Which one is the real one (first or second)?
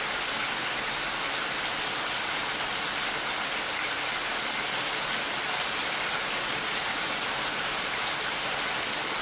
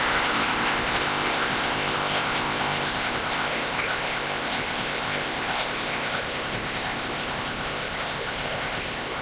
first